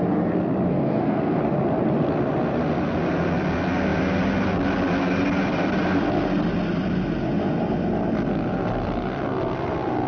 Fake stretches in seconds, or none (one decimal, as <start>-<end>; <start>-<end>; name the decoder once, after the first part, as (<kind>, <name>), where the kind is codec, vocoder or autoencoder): 0.7-1.4 (codec, SNAC)